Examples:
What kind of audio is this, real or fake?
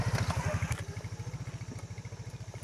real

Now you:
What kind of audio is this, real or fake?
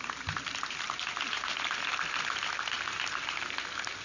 real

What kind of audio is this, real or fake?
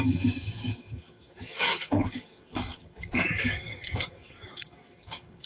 fake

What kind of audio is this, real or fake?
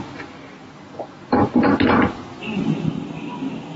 real